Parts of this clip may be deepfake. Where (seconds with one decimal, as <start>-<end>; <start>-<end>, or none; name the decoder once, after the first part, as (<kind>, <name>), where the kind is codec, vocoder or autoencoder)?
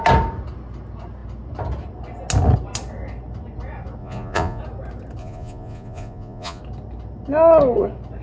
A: 4.0-4.6 (vocoder, Vocos); 5.2-6.6